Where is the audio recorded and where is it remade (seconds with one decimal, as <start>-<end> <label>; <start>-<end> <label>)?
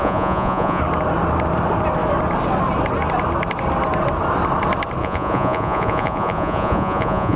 0.0-0.8 remade; 0.8-5.0 recorded; 5.0-7.4 remade